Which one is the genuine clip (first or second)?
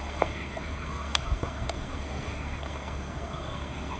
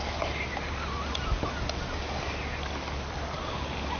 second